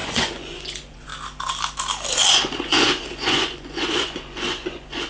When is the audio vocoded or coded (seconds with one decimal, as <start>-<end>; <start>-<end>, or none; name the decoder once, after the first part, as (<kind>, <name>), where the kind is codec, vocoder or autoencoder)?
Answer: 0.0-1.1 (vocoder, Vocos); 2.3-5.1